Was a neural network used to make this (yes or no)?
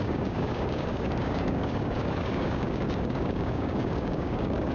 yes